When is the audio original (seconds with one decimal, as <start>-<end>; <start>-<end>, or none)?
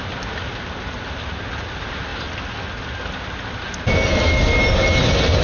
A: 0.0-5.4